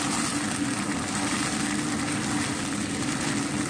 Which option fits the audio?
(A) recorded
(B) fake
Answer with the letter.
A